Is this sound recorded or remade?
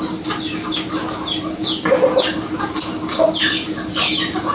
recorded